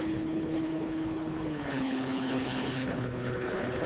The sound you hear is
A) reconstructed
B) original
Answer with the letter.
A